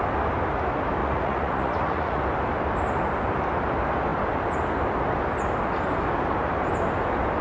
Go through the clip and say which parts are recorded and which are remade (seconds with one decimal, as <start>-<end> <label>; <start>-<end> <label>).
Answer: 0.0-1.0 recorded; 1.0-2.2 remade; 2.2-7.4 recorded

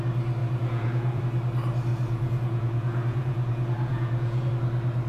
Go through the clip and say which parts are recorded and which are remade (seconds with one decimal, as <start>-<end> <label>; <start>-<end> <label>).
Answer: 0.0-0.4 recorded; 0.4-1.2 remade; 1.2-1.9 recorded; 1.9-4.5 remade; 4.5-5.1 recorded

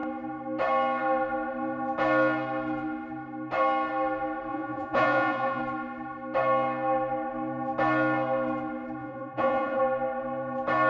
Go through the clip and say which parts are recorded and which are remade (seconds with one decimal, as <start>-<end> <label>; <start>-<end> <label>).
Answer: 0.0-4.5 recorded; 4.5-5.6 remade; 5.6-9.0 recorded; 9.0-9.8 remade; 9.8-10.9 recorded

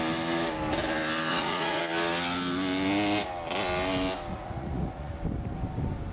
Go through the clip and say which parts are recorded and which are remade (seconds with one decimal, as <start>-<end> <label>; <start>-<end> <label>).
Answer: 0.0-1.3 recorded; 1.3-1.8 remade; 1.8-4.3 recorded; 4.3-5.1 remade; 5.1-6.1 recorded

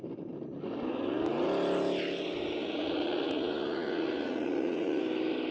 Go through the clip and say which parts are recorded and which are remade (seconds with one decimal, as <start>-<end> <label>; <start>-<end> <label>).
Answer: 0.0-2.6 recorded; 2.6-5.0 remade; 5.0-5.5 recorded

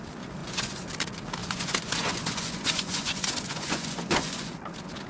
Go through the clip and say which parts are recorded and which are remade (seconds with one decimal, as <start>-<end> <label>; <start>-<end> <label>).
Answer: 0.0-0.4 recorded; 0.4-0.9 remade; 0.9-1.4 recorded; 1.4-4.5 remade; 4.5-5.1 recorded

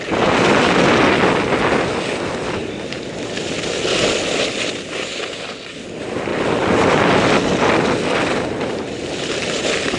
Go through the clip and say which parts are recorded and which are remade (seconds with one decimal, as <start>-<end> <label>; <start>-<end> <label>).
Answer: 0.0-10.0 recorded